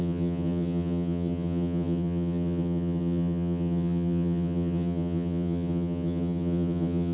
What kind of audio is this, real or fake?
fake